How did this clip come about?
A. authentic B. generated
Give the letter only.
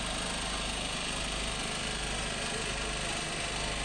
A